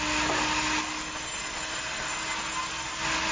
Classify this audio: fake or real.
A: real